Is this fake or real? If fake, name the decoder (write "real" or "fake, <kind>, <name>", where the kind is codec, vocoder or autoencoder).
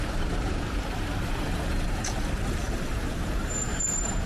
fake, vocoder, BigVGAN v2